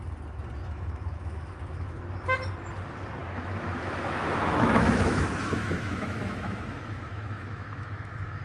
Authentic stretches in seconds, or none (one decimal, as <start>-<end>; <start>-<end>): 0.0-0.6; 2.0-3.2